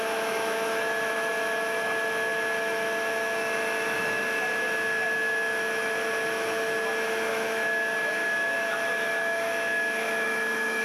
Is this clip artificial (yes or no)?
yes